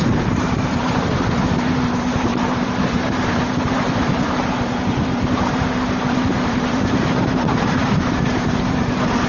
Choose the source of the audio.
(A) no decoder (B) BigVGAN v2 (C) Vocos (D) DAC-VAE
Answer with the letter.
B